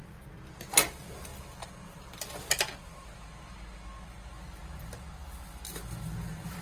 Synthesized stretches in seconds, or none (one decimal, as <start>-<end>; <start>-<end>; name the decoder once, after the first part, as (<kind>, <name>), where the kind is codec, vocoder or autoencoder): none